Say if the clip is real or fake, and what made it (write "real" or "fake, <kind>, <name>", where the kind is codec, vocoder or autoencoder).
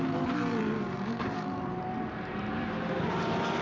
fake, vocoder, BigVGAN v2